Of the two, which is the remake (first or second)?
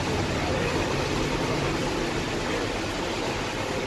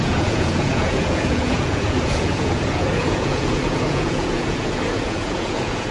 second